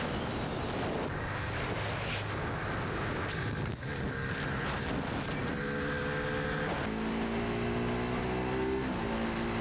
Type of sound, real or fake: real